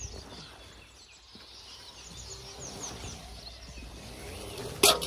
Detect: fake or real real